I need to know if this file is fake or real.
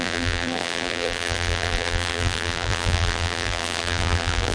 fake